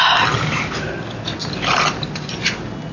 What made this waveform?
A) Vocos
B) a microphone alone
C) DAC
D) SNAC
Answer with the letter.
B